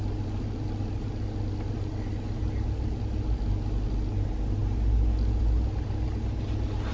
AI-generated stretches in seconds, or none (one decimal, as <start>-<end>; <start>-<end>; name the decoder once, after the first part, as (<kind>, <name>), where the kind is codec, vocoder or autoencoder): none